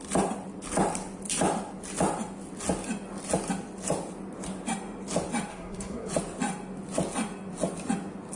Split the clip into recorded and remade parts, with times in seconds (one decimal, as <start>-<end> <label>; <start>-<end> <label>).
0.0-5.5 recorded; 5.5-6.1 remade; 6.1-8.4 recorded